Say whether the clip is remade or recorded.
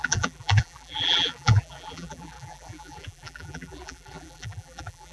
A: remade